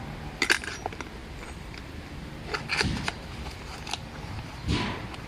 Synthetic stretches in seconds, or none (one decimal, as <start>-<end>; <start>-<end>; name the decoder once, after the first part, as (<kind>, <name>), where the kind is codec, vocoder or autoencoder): 1.2-3.2 (vocoder, BigVGAN v2)

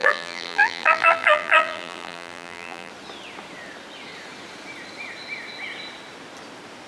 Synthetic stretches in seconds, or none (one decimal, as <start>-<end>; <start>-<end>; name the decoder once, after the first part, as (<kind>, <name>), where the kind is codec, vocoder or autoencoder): 0.0-2.9 (vocoder, BigVGAN v2)

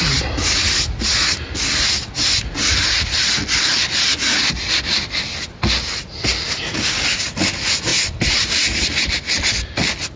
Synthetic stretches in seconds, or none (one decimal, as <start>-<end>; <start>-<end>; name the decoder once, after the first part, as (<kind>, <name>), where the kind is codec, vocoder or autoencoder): 7.9-9.1 (vocoder, BigVGAN v2)